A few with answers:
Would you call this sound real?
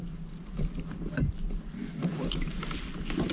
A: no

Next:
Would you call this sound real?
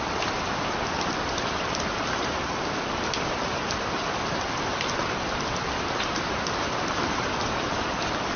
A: no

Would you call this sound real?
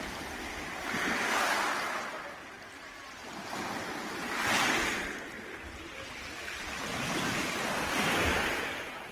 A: yes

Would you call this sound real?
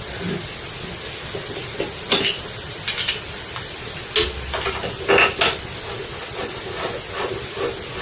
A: yes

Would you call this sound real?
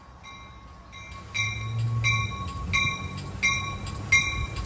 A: yes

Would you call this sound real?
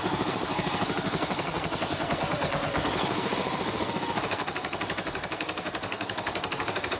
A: no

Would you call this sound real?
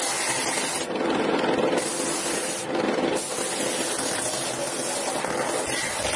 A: yes